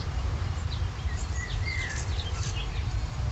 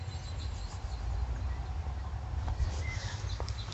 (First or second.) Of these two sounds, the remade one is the first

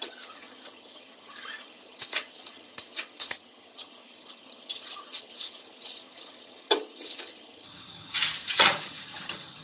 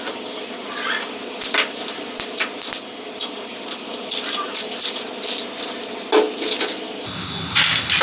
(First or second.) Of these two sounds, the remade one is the first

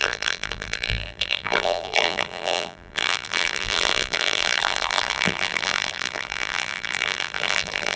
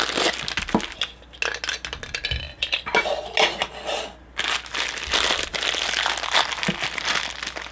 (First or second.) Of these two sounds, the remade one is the first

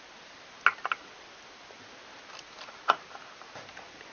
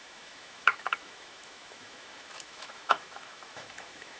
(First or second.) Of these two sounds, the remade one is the second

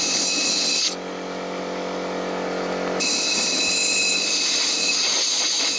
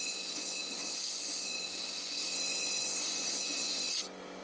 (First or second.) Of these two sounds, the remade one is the second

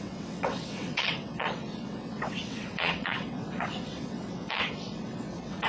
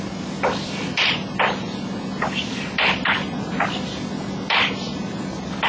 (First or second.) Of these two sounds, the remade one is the first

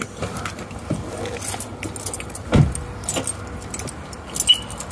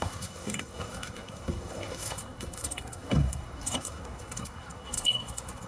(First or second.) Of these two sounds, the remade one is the second